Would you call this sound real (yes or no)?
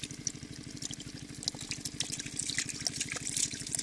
yes